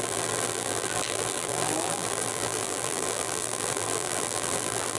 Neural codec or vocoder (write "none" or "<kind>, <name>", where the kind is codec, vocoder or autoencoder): vocoder, BigVGAN v2